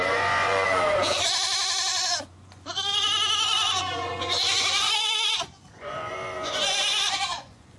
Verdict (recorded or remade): remade